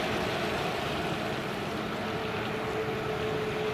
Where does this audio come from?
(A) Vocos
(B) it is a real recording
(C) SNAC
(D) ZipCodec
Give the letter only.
B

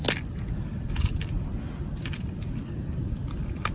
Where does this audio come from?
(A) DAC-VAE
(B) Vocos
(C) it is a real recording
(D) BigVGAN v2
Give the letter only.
C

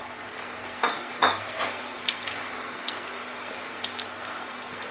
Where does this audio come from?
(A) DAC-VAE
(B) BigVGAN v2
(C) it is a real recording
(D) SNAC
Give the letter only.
D